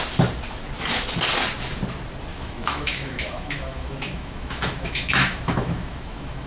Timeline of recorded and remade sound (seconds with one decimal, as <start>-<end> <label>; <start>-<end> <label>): 0.0-2.3 recorded; 2.3-6.5 remade